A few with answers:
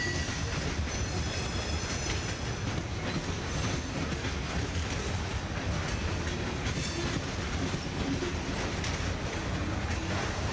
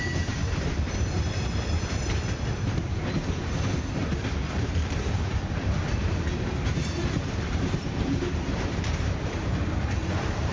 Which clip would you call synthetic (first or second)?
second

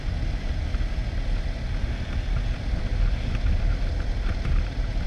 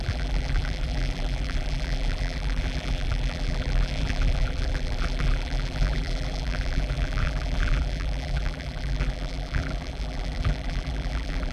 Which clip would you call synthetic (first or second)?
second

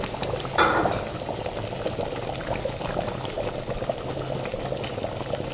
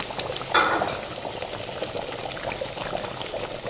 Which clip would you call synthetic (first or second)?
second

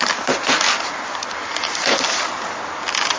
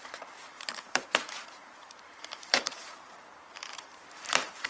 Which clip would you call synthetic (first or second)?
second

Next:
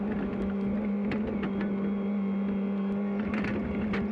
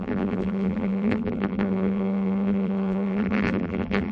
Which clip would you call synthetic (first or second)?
second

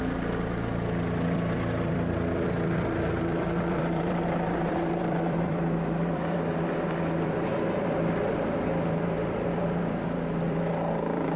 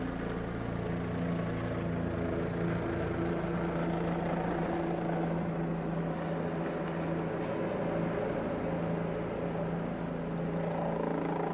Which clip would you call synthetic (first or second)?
first